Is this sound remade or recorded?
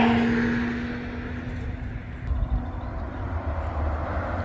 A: recorded